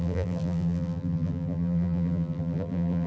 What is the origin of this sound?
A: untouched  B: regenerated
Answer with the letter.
B